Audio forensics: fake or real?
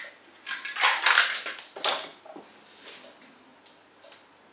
real